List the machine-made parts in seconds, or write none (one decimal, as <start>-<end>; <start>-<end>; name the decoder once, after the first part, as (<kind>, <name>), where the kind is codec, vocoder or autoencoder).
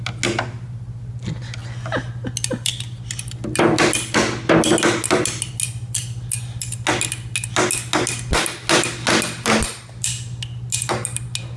none